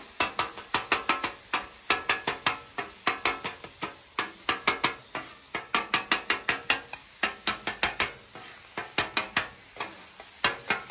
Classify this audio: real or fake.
real